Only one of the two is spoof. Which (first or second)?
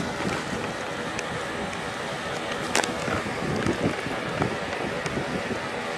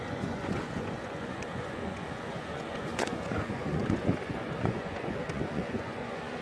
second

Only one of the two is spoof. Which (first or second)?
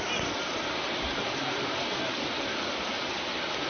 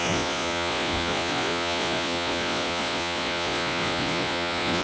second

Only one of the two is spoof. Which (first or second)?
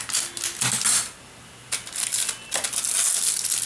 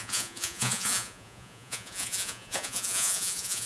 second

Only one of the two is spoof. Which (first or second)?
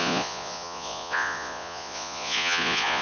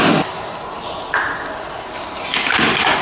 first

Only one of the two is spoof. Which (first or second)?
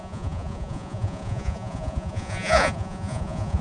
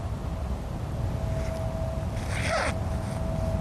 first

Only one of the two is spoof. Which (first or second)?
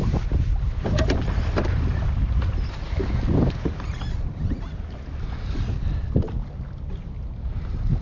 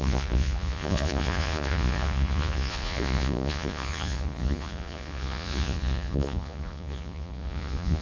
second